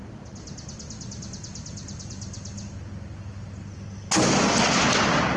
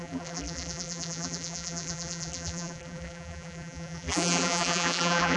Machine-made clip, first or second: second